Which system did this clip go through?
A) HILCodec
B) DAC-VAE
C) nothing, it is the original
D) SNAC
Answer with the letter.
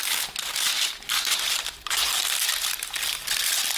C